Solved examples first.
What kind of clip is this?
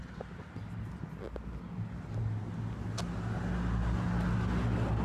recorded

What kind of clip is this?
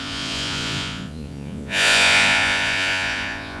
remade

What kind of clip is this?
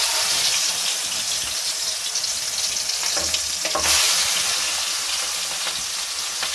recorded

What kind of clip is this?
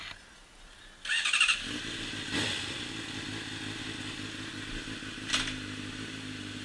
recorded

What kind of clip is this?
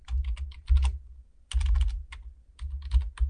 recorded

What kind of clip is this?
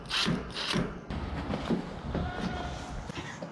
recorded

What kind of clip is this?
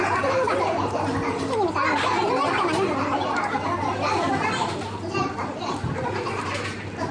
recorded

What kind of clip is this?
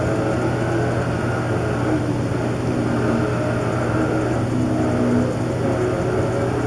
recorded